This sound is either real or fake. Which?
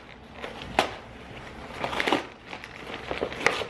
real